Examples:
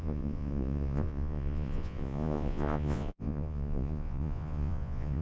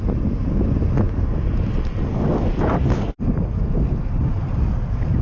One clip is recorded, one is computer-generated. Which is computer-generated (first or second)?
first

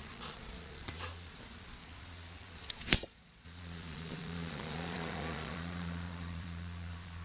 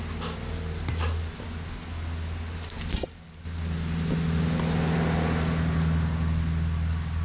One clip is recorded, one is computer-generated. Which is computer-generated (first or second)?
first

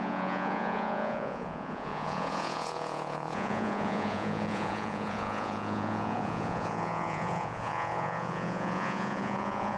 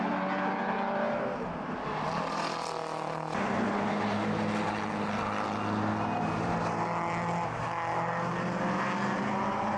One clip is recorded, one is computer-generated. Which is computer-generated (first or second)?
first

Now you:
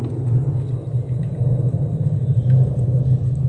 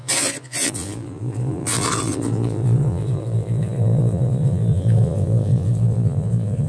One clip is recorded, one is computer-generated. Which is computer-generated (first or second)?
second